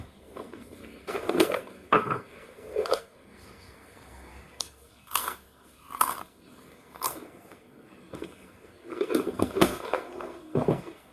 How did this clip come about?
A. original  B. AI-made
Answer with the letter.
B